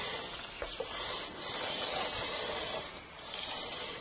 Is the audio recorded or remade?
recorded